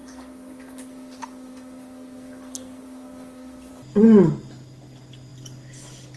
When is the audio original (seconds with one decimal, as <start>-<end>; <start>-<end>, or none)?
3.7-6.2